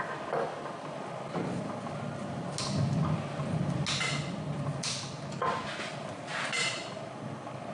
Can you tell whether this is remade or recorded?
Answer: recorded